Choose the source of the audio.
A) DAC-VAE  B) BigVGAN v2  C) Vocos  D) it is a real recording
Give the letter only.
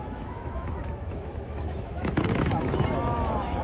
A